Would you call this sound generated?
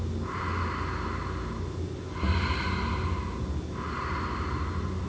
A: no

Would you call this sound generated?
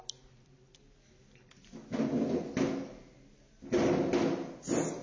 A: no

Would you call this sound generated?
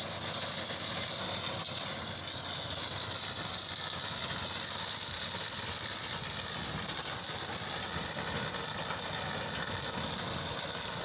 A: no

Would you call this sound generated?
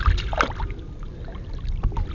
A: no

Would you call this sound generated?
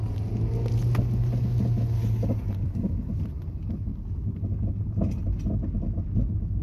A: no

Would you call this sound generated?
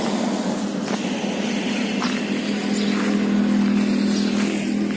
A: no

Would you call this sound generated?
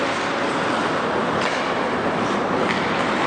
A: no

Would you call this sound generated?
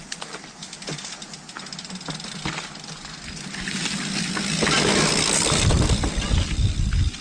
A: no